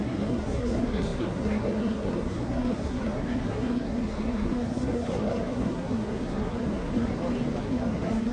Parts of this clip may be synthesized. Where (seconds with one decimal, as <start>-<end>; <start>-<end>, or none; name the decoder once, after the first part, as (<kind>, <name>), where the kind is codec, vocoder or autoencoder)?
0.0-7.1 (codec, SNAC); 7.6-8.3